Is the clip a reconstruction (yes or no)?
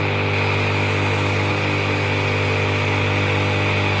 no